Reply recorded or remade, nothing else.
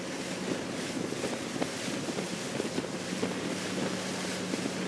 recorded